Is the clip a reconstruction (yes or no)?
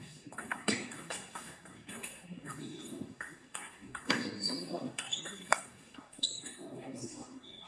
yes